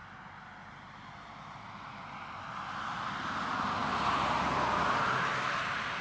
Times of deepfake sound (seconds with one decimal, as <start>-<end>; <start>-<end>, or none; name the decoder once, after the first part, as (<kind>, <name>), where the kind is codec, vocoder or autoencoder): none